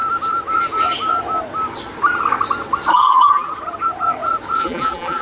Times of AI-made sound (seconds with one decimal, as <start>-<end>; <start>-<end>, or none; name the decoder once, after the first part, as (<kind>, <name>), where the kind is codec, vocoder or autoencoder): 2.9-3.5 (vocoder, BigVGAN v2); 4.6-5.2